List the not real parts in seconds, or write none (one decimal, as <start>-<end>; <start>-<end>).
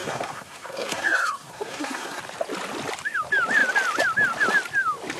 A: 0.0-2.2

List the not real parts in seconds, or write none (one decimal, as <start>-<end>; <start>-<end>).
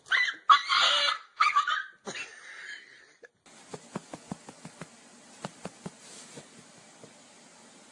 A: 1.3-1.8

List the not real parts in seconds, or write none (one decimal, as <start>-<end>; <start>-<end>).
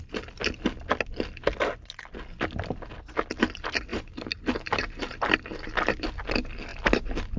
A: 3.9-5.3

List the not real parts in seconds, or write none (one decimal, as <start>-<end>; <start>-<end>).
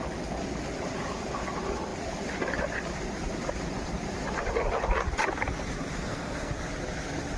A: 5.9-6.5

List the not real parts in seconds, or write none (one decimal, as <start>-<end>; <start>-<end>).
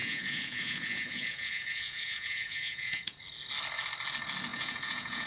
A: 0.0-3.2; 4.5-5.3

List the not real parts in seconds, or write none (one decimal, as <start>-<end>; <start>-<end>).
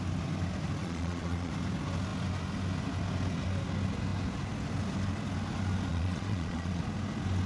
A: 0.8-1.5; 5.9-6.8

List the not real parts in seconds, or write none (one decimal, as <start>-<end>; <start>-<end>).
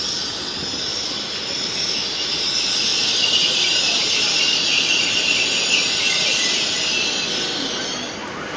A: 0.9-1.5; 2.9-7.7